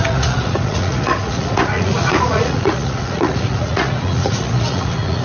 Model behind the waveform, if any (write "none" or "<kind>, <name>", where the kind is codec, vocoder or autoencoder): vocoder, Vocos